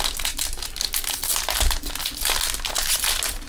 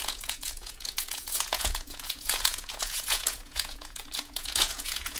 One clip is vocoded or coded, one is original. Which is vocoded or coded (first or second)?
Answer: second